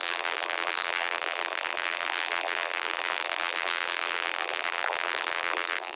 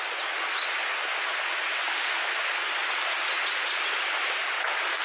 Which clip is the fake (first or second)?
first